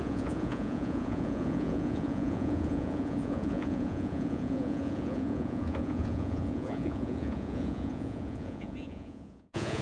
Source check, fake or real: fake